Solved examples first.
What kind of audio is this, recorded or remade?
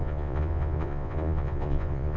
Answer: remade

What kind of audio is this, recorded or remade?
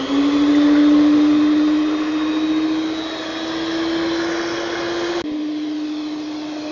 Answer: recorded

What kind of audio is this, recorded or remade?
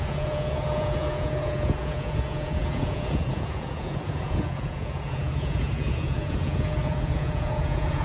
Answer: remade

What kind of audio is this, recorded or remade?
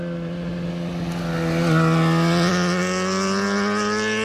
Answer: recorded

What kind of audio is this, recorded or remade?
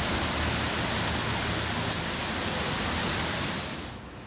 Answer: recorded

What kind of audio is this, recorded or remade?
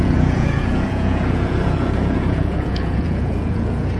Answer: remade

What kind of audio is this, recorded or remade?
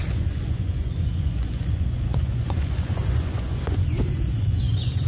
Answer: remade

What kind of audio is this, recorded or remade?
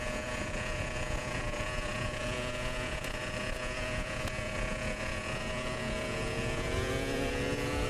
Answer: remade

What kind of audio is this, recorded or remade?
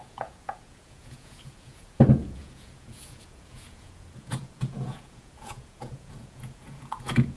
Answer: remade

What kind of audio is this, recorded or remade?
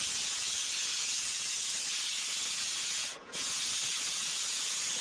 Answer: remade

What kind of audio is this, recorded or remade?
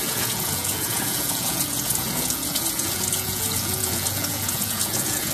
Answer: remade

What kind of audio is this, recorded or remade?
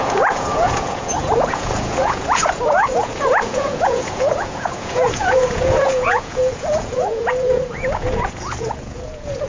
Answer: remade